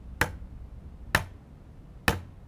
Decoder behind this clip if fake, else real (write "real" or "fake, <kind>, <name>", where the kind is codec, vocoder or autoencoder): real